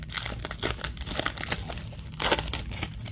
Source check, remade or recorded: recorded